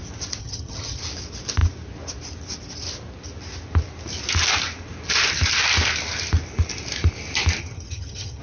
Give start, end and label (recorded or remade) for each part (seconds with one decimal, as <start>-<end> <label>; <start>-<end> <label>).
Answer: 0.0-0.4 recorded; 0.4-1.0 remade; 1.0-7.6 recorded; 7.6-8.4 remade